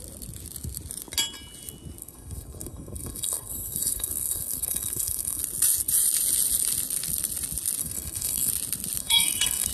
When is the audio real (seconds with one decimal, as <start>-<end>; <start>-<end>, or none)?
0.0-2.0; 5.4-7.8; 8.5-9.0